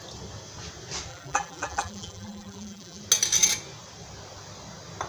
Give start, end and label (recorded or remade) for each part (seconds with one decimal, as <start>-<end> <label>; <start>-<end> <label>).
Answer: 0.0-1.1 recorded; 1.1-3.0 remade; 3.0-5.1 recorded